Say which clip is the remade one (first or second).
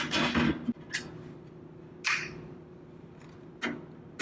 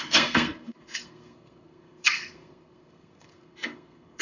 second